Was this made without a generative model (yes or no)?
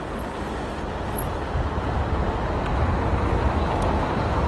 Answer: yes